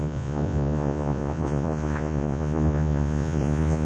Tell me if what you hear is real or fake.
fake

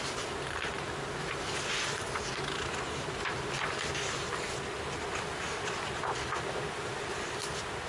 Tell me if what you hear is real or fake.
real